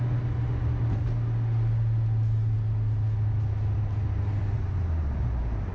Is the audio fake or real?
real